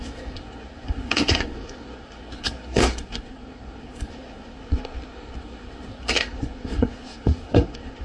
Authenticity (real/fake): fake